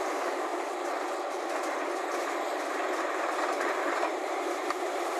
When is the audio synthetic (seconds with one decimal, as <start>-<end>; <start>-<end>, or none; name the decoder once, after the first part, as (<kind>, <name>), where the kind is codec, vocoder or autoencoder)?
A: 0.0-0.5 (vocoder, BigVGAN v2); 3.0-5.2